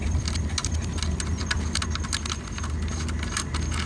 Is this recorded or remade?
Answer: recorded